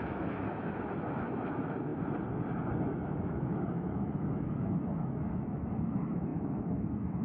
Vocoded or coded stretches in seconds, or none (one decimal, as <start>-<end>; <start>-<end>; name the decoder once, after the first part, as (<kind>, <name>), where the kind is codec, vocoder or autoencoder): 0.0-1.9 (autoencoder, DAC-VAE); 2.8-7.2